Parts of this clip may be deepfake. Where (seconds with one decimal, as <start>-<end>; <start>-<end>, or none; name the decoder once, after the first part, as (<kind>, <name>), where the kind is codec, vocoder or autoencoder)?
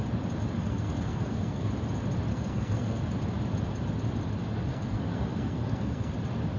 0.6-1.7 (codec, SNAC); 2.3-3.0; 4.7-6.1